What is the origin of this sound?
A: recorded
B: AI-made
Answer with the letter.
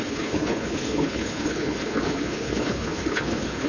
B